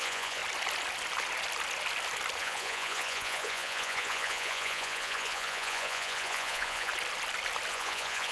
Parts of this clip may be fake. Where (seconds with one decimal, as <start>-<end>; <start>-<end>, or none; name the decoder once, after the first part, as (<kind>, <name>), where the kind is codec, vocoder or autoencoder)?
0.0-0.4 (vocoder, Vocos); 2.4-6.9; 7.7-8.3